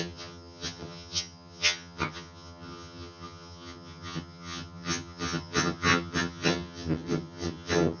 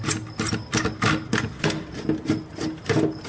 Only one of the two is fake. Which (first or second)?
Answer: first